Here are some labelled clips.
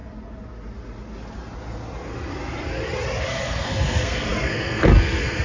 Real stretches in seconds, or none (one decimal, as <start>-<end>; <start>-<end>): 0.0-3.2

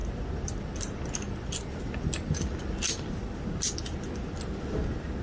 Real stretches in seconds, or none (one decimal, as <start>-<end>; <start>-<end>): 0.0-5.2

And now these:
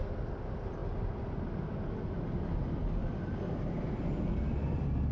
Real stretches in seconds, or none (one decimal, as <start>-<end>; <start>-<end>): 0.0-5.1

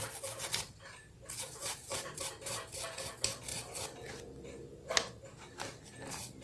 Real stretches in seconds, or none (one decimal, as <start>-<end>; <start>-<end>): 0.0-1.6; 2.2-6.4

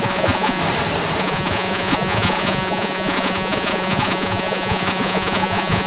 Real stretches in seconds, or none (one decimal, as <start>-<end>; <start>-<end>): 0.6-1.2